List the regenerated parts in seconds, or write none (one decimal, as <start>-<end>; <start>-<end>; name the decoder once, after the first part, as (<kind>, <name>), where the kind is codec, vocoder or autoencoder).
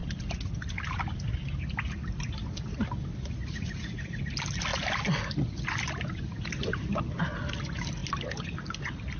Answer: none